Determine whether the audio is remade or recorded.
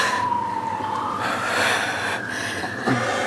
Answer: recorded